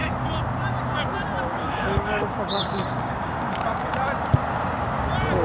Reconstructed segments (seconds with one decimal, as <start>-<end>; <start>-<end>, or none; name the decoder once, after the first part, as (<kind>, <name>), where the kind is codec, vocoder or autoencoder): 1.6-3.9 (codec, DAC)